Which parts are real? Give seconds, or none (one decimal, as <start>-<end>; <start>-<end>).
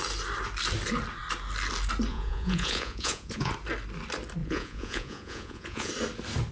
0.0-2.1; 3.5-4.4; 5.9-6.5